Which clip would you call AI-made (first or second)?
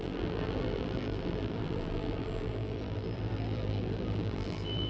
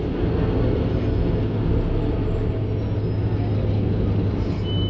first